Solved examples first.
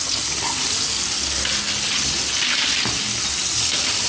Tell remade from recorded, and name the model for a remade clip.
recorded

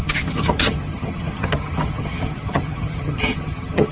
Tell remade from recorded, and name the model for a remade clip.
remade, vocoder, HiFi-GAN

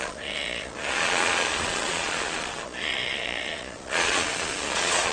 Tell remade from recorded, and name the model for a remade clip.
remade, vocoder, Vocos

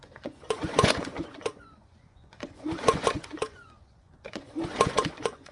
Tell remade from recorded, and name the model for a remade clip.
remade, vocoder, Vocos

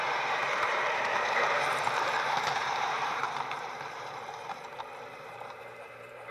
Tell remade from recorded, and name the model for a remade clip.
remade, vocoder, BigVGAN v2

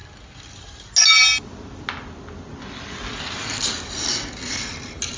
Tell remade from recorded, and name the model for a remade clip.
recorded